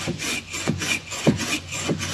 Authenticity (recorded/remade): remade